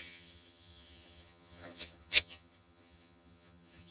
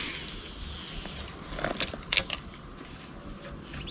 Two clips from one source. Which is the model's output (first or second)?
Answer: first